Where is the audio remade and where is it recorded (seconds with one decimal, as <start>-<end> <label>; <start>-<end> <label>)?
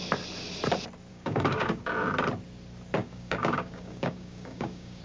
0.0-1.1 recorded; 1.1-1.8 remade; 1.8-3.0 recorded; 3.0-5.0 remade